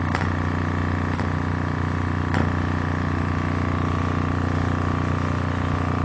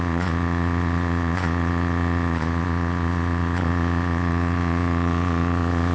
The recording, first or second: first